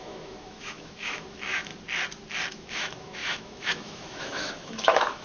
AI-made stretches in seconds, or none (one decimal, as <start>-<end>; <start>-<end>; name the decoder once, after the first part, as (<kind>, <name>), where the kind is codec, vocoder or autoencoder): 0.0-1.7 (autoencoder, DAC-VAE); 2.5-5.2